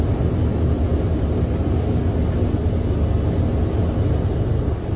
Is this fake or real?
real